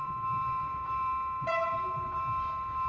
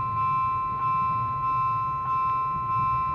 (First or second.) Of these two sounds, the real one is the second